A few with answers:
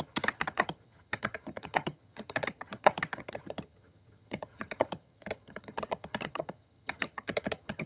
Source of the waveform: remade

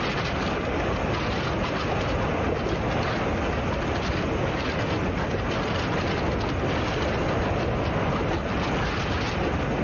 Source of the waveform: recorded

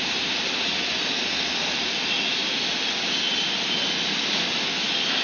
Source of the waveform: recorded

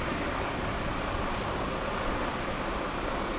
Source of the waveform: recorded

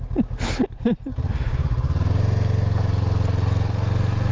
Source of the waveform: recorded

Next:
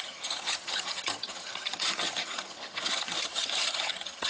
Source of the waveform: remade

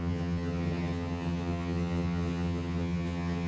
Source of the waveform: remade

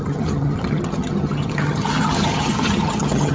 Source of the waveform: remade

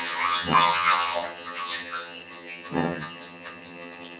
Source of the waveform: remade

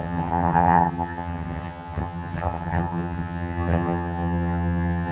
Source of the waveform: remade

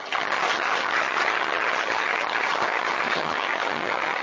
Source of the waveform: remade